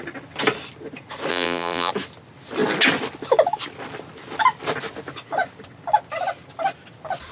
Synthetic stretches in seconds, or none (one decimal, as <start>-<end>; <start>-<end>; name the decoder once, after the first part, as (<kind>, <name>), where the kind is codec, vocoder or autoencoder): 1.3-1.9 (vocoder, BigVGAN v2)